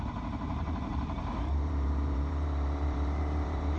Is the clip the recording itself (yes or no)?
no